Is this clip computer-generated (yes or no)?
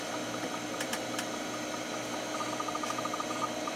yes